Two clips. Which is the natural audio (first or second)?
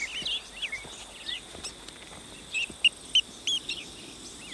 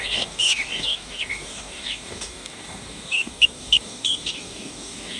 first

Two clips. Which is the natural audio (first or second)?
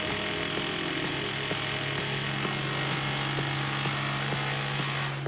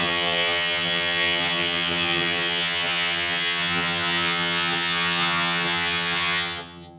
first